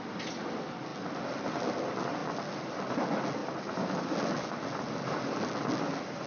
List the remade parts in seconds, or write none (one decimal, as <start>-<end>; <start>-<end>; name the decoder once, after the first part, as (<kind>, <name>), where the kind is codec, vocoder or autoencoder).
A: 3.4-4.1 (vocoder, BigVGAN v2)